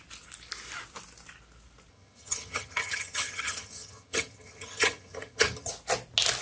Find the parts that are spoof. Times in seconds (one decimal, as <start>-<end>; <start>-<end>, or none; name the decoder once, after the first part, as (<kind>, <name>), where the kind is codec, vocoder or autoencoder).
1.9-5.7 (vocoder, HiFi-GAN)